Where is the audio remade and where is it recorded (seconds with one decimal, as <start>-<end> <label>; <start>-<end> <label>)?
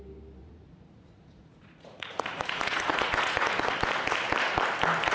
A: 0.0-0.4 recorded; 0.4-3.5 remade; 3.5-5.1 recorded